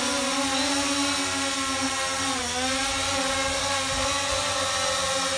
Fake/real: real